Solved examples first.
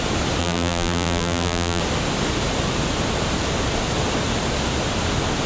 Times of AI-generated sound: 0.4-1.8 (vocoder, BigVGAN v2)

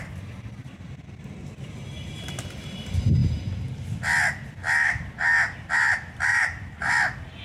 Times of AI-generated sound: 6.3-6.9 (vocoder, BigVGAN v2)

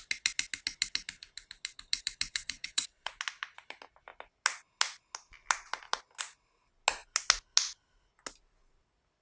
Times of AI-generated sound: 2.3-3.1 (vocoder, WaveNeXt)

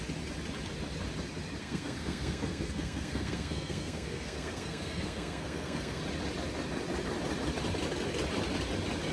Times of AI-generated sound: 1.6-6.0 (codec, SNAC)

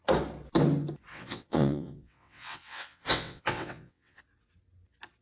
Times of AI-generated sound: 1.1-4.2 (vocoder, WaveNeXt)

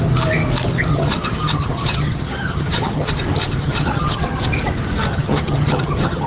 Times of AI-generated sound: 0.9-3.1 (vocoder, HiFi-GAN); 3.6-4.4; 5.1-6.3

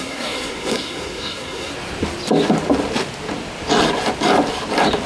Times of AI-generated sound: 0.0-1.7 (codec, SNAC)

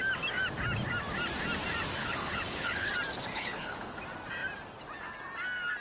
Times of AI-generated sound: 2.0-2.9 (codec, HILCodec); 3.3-4.0